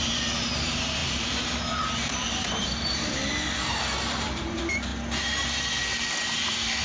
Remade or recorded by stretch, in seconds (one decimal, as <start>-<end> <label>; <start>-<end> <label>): 0.0-3.2 remade; 3.2-3.9 recorded; 3.9-4.9 remade; 4.9-6.8 recorded